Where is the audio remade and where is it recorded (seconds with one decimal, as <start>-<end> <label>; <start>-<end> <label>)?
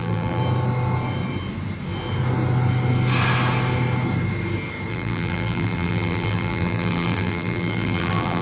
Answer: 0.0-0.4 remade; 0.4-4.9 recorded; 4.9-8.4 remade